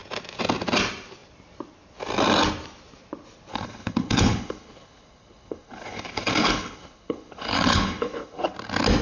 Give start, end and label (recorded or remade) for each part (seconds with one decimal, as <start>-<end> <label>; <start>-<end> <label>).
0.0-3.5 recorded; 3.5-8.5 remade; 8.5-9.0 recorded